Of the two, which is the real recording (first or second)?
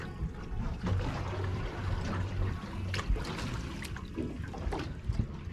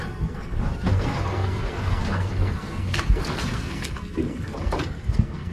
first